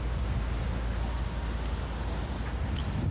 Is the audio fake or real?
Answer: real